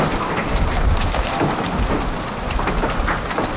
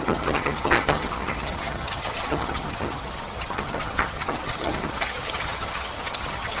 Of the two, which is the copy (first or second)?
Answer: second